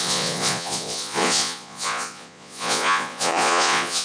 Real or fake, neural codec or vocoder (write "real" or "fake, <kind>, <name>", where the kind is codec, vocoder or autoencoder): fake, vocoder, Vocos